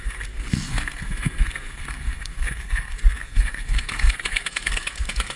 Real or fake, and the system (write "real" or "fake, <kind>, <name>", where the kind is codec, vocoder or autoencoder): fake, codec, SNAC